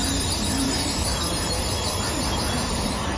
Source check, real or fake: real